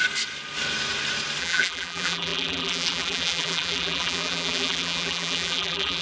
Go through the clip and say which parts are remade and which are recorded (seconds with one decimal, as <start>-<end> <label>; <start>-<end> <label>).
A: 0.0-1.4 recorded; 1.4-6.0 remade